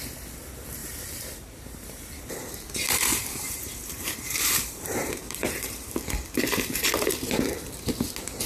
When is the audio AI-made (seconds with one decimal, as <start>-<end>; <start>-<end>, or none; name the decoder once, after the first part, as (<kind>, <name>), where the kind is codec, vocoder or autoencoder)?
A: 0.8-5.9 (vocoder, BigVGAN v2)